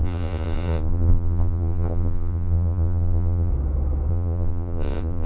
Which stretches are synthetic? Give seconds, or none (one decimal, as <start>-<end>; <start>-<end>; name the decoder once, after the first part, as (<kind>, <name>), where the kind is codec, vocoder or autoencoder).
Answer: 0.0-3.5 (vocoder, Vocos); 4.1-5.3